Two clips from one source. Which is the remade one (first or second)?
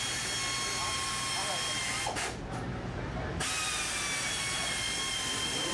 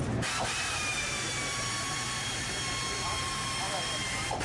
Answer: second